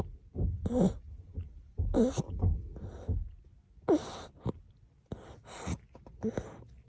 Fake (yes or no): no